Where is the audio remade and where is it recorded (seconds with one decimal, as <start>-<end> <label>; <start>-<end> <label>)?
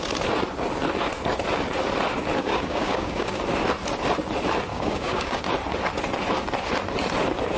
0.0-2.4 recorded; 2.4-3.4 remade; 3.4-4.7 recorded; 4.7-5.4 remade; 5.4-7.6 recorded